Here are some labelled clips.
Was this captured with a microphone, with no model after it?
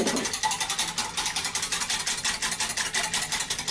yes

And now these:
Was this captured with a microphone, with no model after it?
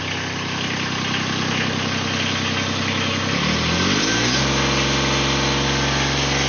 yes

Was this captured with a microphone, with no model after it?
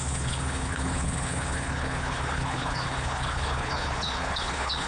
no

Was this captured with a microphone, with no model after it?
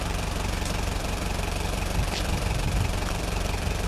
no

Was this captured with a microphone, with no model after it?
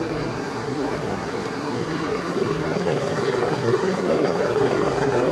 no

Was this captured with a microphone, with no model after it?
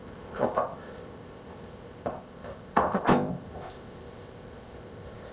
no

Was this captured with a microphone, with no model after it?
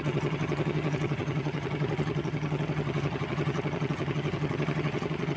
no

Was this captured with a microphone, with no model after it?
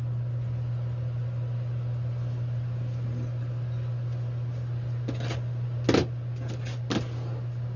yes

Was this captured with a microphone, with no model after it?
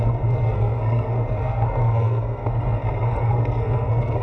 no